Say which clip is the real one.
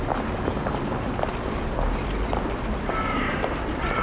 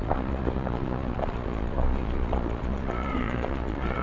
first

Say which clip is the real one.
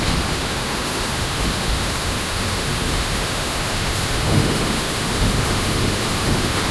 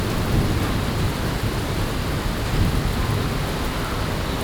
second